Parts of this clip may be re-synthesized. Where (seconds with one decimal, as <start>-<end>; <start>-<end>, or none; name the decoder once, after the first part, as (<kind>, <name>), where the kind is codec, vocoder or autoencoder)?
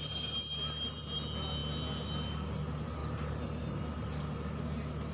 3.0-3.8 (vocoder, BigVGAN v2)